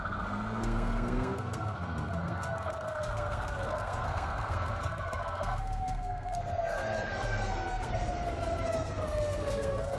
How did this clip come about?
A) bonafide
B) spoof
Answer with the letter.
B